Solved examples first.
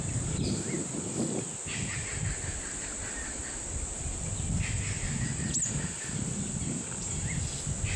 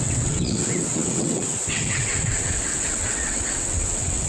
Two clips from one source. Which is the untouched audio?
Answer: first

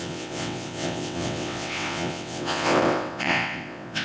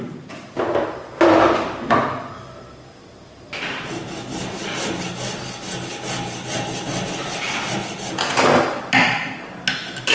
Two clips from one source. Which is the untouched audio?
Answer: second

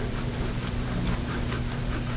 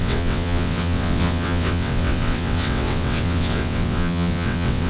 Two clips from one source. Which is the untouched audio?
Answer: first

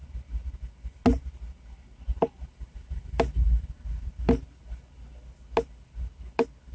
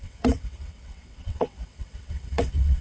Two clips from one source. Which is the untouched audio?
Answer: first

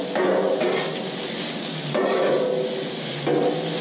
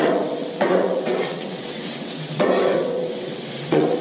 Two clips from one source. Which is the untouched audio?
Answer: first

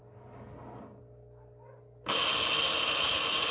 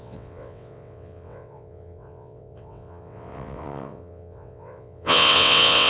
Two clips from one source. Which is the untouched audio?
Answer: first